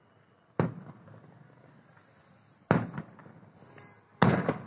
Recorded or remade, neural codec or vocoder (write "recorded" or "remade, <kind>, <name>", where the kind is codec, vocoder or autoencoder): recorded